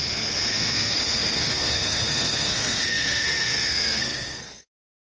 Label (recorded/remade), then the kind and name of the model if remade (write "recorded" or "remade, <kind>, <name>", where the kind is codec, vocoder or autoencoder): remade, codec, SNAC